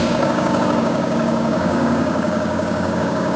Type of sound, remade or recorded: remade